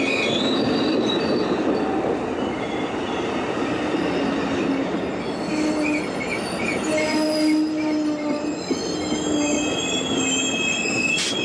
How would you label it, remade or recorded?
recorded